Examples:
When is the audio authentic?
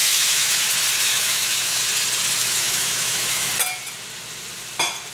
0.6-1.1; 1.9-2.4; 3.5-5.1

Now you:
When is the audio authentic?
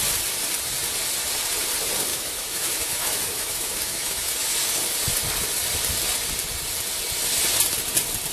0.0-2.1; 4.3-8.3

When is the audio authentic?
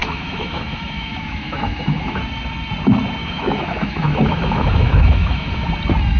2.2-3.2; 5.7-6.2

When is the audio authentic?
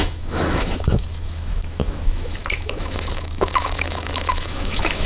none